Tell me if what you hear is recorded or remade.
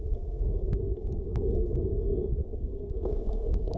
remade